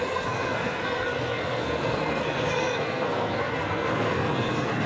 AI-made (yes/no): yes